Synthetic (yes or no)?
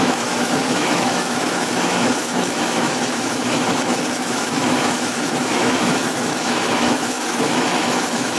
yes